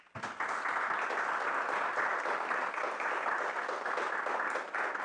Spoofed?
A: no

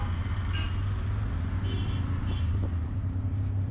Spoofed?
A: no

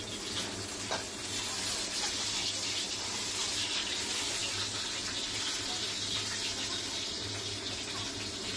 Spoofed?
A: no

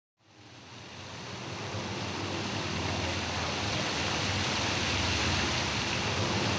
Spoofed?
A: no